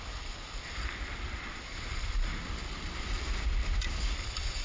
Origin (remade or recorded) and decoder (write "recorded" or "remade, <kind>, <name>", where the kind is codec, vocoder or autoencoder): remade, vocoder, BigVGAN v2